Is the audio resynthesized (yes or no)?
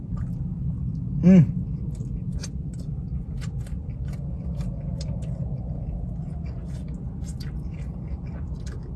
no